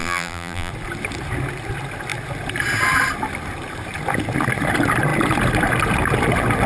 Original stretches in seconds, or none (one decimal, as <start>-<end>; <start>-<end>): 0.7-6.7